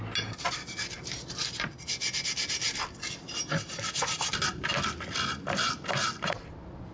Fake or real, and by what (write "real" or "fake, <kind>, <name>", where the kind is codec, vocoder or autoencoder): real